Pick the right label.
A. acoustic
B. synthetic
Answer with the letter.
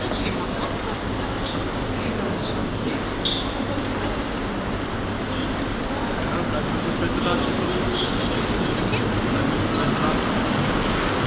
A